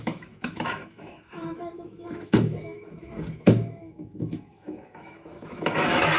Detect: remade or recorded remade